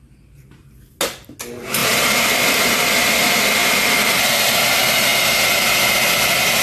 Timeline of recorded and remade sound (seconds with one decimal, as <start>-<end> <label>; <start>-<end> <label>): 0.0-1.8 recorded; 1.8-2.6 remade; 2.6-3.6 recorded; 3.6-4.2 remade; 4.2-6.6 recorded